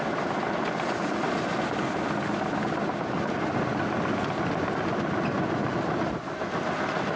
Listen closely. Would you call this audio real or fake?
real